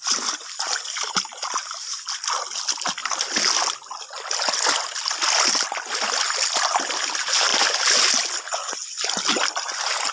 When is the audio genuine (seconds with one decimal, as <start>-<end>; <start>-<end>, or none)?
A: 0.0-10.1